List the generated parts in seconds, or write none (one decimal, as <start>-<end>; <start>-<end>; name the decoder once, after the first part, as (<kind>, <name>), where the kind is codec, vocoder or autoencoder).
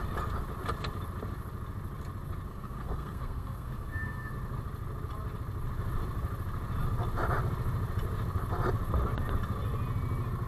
2.5-4.3 (codec, SNAC)